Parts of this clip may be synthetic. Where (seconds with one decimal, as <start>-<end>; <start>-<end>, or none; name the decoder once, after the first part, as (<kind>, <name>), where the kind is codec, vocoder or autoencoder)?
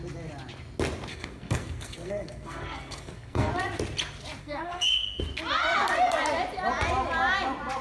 1.1-3.5 (codec, SNAC); 4.4-5.2